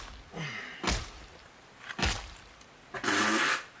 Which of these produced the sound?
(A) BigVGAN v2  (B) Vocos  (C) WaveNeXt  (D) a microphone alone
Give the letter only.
D